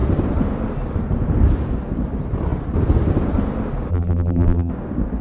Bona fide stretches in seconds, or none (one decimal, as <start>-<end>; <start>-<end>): 0.0-3.9; 4.7-5.2